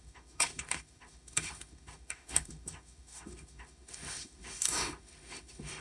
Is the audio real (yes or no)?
no